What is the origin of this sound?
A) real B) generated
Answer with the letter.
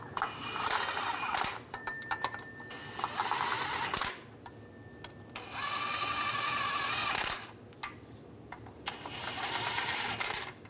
A